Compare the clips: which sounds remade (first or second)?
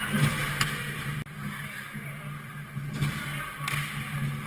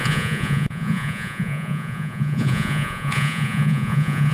second